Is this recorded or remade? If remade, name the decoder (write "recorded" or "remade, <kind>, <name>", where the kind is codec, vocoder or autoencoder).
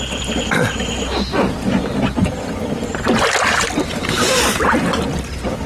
recorded